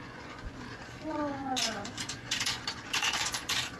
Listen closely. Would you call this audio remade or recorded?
remade